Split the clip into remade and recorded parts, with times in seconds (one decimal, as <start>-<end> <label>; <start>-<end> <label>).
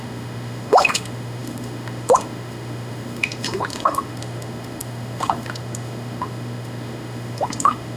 0.0-8.0 remade